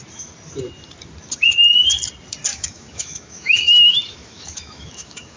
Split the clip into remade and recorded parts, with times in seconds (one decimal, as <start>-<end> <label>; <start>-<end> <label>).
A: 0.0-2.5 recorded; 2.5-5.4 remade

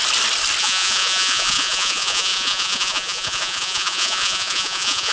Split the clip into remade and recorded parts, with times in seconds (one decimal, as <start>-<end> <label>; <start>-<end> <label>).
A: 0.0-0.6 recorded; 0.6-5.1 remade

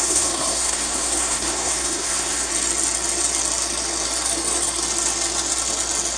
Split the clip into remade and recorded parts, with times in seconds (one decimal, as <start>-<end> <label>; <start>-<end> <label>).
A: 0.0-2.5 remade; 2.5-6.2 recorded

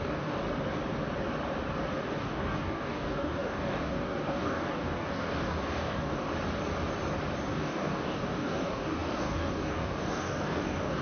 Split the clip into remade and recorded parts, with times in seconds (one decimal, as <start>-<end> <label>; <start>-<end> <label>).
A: 0.0-0.4 remade; 0.4-1.9 recorded; 1.9-6.3 remade; 6.3-7.5 recorded; 7.5-11.0 remade

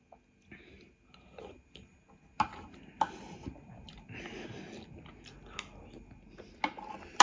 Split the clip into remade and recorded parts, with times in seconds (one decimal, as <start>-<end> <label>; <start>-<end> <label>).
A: 0.0-7.2 recorded

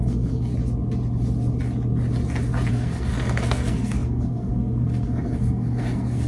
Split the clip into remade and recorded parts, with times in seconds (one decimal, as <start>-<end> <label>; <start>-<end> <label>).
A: 0.0-0.5 remade; 0.5-2.7 recorded; 2.7-6.3 remade

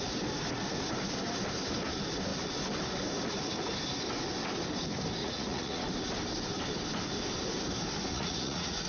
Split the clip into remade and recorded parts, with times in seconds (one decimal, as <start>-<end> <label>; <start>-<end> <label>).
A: 0.0-5.2 recorded; 5.2-5.8 remade; 5.8-8.1 recorded; 8.1-8.9 remade